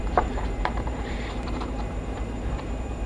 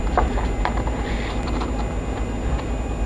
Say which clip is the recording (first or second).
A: second